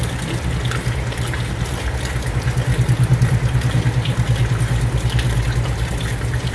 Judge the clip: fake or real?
real